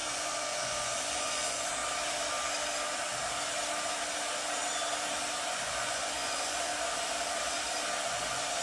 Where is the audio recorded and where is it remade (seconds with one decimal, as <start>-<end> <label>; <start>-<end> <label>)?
0.0-1.8 remade; 1.8-5.5 recorded; 5.5-6.7 remade; 6.7-8.0 recorded; 8.0-8.6 remade